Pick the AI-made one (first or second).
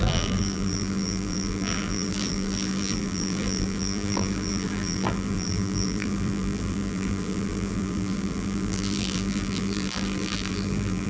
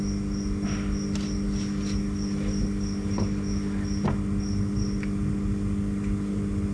first